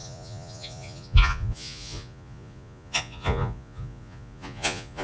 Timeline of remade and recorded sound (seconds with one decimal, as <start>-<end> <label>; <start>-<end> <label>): 0.0-5.0 remade

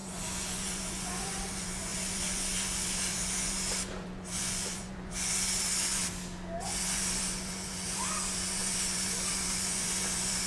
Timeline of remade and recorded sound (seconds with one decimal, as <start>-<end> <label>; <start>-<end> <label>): 0.0-6.0 remade; 6.0-6.6 recorded; 6.6-10.5 remade

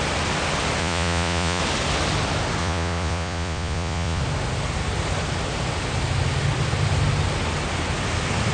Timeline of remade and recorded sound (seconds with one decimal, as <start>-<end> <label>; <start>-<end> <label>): 0.0-0.8 recorded; 0.8-1.6 remade; 1.6-2.6 recorded; 2.6-4.2 remade; 4.2-8.5 recorded